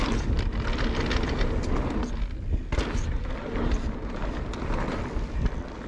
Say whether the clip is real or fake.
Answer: real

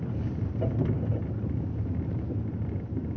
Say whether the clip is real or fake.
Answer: real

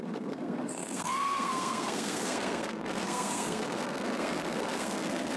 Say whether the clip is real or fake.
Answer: fake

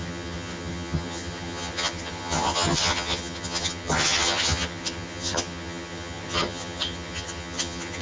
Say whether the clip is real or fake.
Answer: fake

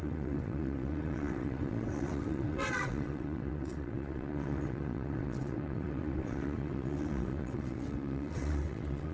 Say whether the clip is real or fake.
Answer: fake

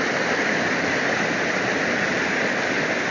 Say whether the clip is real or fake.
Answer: real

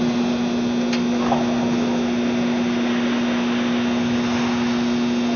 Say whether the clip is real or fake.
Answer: real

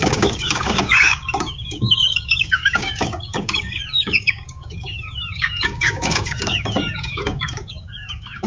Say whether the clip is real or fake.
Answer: fake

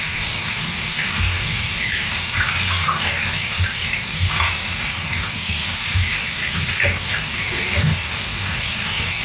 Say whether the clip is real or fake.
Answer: fake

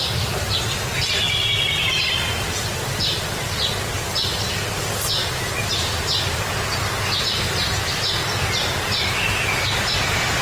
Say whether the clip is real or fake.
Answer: real